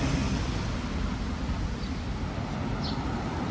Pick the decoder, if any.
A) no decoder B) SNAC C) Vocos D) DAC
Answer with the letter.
A